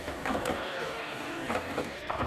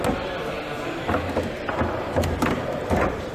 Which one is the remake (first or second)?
first